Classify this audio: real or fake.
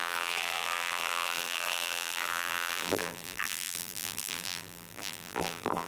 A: fake